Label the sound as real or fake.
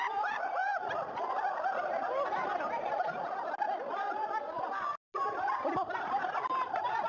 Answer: real